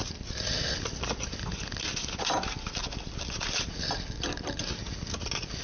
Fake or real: real